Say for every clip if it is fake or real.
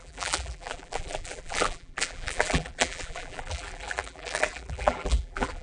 fake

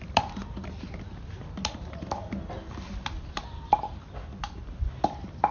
fake